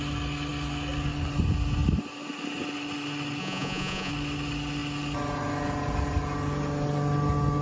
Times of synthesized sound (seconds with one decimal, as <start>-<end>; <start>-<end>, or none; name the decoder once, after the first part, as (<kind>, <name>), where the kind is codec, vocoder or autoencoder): 3.4-4.1 (vocoder, Vocos)